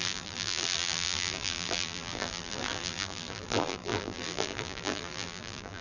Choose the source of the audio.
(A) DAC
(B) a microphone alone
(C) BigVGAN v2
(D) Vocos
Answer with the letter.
C